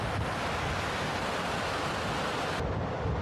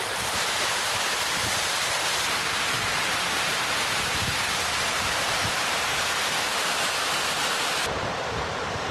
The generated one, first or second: second